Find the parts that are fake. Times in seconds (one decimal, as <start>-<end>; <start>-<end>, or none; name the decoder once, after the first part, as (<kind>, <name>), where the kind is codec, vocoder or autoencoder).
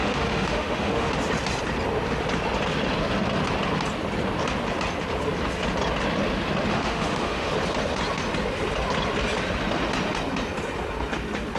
0.0-1.1 (autoencoder, DAC-VAE); 6.7-7.5